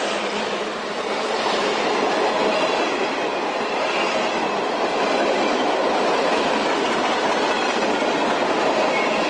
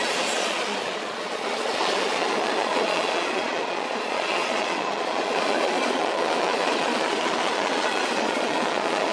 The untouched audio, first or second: first